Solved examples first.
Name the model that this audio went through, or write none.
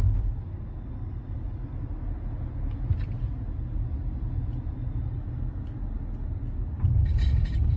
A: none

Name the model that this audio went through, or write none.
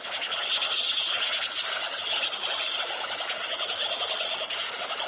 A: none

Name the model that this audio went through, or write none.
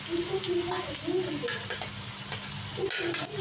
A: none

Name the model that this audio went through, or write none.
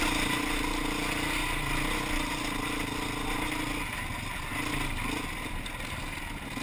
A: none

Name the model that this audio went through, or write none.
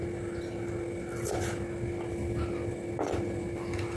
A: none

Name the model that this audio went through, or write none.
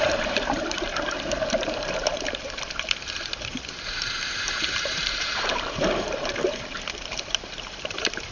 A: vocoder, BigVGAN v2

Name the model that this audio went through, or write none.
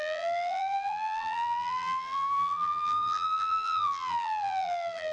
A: vocoder, BigVGAN v2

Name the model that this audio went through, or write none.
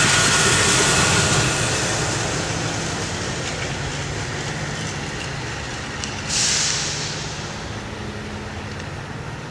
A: none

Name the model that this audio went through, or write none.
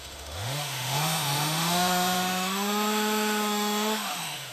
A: autoencoder, DAC-VAE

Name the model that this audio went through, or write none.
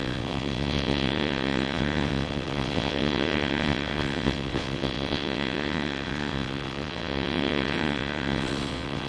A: vocoder, WaveNeXt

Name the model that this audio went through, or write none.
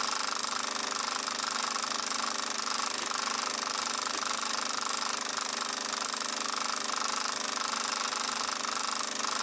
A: none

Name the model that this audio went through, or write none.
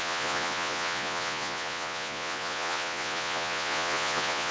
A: vocoder, Vocos